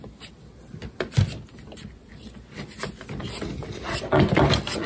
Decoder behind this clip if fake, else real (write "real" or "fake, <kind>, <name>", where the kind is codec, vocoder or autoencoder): real